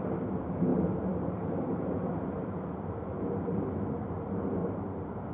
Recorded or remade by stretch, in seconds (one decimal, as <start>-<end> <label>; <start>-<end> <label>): 0.0-0.7 recorded; 0.7-3.9 remade; 3.9-4.6 recorded; 4.6-5.3 remade

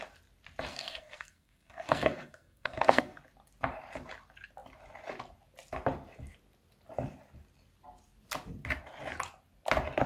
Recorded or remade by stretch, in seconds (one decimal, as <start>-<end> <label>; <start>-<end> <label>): 0.0-0.7 recorded; 0.7-3.2 remade; 3.2-10.1 recorded